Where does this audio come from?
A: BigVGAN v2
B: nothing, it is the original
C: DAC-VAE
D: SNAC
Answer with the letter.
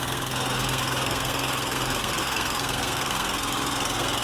D